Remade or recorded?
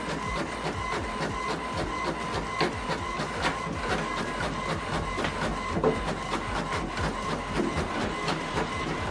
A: recorded